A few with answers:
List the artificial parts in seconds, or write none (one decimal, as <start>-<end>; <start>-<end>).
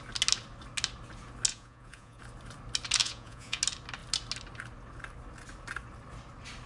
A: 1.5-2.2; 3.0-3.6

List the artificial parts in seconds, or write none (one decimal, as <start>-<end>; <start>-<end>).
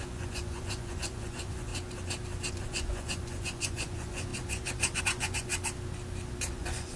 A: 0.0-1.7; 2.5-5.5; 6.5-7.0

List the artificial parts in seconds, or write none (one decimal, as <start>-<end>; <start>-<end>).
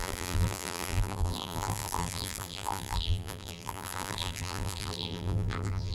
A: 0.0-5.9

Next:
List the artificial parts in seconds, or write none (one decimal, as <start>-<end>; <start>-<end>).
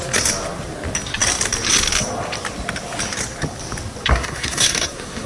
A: 4.1-5.3